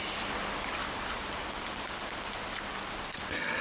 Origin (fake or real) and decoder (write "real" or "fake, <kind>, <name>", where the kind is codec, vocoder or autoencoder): real